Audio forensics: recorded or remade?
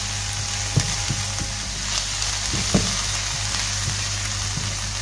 recorded